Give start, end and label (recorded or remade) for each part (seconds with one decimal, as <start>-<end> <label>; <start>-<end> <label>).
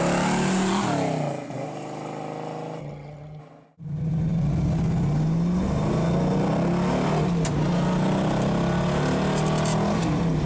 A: 0.0-2.8 recorded; 2.8-3.4 remade; 3.4-10.5 recorded